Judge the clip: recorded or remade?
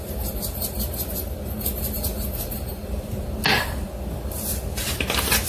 recorded